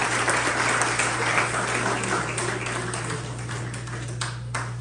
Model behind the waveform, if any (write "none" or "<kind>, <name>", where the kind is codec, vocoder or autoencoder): none